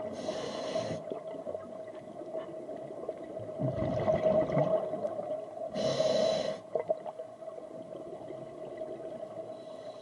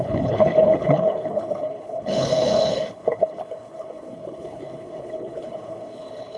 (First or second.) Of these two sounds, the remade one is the second